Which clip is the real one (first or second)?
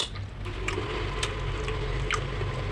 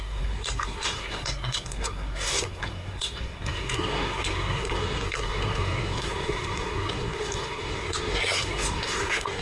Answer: first